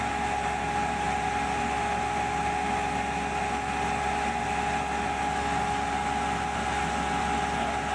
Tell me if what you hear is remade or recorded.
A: recorded